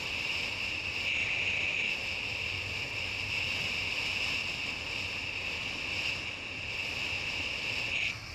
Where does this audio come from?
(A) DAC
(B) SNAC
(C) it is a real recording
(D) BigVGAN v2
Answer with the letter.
C